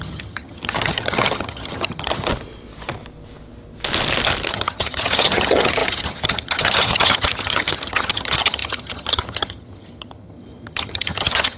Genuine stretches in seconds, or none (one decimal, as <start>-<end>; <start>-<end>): 2.3-4.5